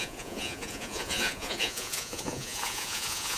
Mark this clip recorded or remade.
remade